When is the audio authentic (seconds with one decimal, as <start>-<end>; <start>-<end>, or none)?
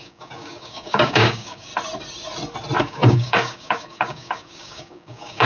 1.7-2.8